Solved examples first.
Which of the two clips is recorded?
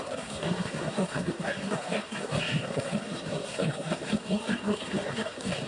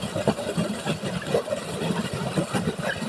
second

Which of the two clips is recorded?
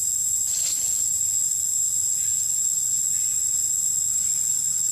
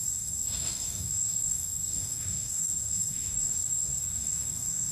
first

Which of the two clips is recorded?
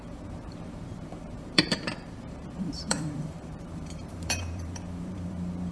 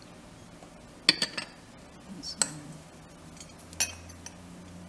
second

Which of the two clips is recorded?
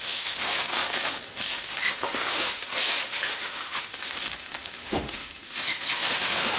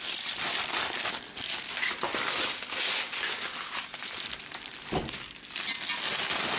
second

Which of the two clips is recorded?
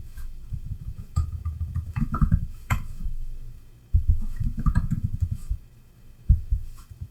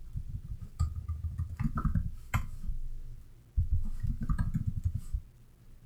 second